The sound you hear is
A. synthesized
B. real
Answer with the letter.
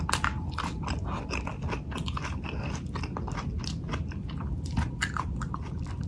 B